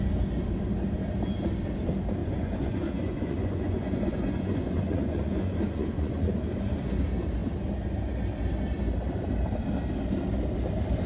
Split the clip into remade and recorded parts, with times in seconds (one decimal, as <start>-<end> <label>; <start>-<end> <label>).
0.0-2.2 recorded; 2.2-6.6 remade; 6.6-11.1 recorded